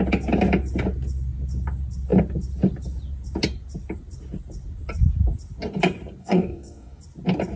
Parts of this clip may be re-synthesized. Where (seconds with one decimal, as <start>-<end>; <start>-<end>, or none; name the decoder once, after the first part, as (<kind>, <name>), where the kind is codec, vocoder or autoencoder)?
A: 6.2-7.0 (codec, DAC)